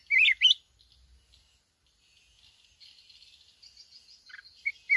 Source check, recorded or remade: recorded